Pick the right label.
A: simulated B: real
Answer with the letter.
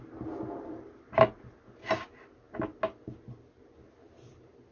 B